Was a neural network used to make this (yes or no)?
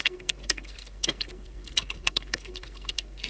yes